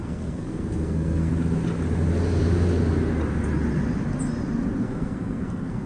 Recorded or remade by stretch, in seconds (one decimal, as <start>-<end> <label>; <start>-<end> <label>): 0.0-1.3 remade; 1.3-4.8 recorded; 4.8-5.9 remade